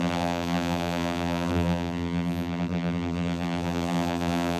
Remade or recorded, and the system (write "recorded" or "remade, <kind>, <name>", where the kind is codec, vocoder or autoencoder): remade, vocoder, BigVGAN v2